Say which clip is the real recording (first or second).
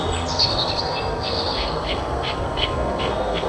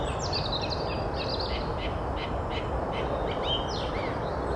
second